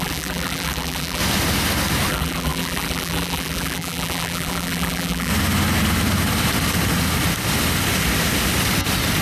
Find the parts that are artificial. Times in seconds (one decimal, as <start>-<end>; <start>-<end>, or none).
0.0-1.2; 2.1-5.3